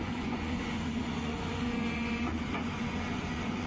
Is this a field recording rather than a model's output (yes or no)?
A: no